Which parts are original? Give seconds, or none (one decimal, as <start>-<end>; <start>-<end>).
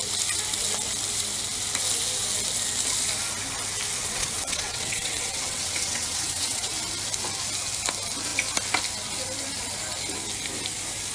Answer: 0.0-4.0; 6.7-11.1